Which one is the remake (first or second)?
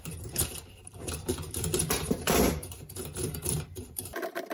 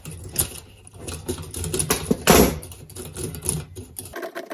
first